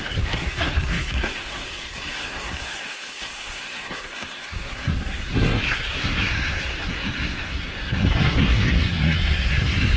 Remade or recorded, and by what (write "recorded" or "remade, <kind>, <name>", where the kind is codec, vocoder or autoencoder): remade, codec, SNAC